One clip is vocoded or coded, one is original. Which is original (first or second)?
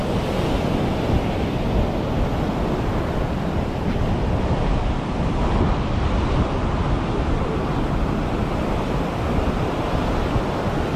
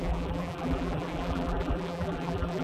first